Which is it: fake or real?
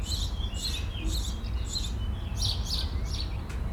real